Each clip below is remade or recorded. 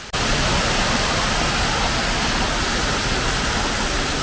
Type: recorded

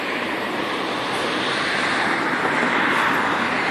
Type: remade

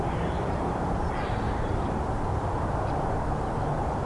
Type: remade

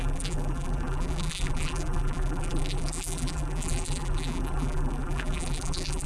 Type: remade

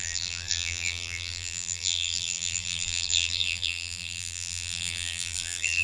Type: remade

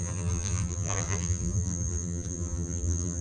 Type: remade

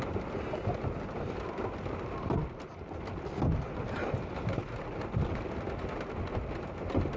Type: recorded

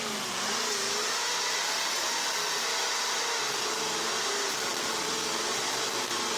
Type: recorded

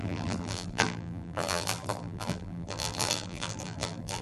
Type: remade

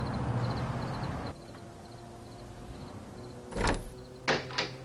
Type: recorded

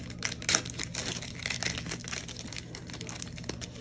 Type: recorded